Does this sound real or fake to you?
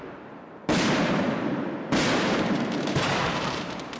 fake